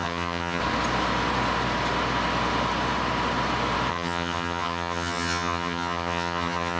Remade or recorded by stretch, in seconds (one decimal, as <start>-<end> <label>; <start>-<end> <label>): 0.0-0.6 remade; 0.6-3.9 recorded; 3.9-6.8 remade